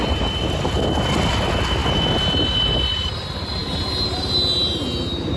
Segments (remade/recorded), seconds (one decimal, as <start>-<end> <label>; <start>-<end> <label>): 0.0-5.4 recorded